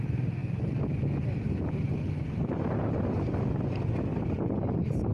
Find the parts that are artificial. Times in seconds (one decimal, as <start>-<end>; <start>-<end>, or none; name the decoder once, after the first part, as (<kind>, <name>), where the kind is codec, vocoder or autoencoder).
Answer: none